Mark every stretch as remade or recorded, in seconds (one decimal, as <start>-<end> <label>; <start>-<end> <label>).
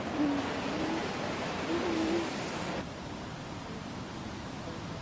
0.0-1.0 recorded; 1.0-4.0 remade; 4.0-5.0 recorded